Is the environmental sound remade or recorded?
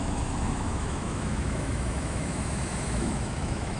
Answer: remade